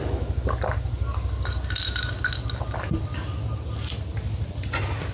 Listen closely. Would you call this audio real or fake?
real